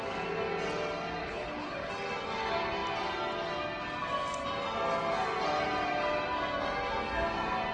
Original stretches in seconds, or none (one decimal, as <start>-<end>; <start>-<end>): 0.0-1.2; 1.9-7.7